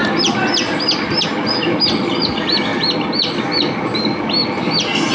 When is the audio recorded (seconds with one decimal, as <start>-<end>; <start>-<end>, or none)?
0.8-4.4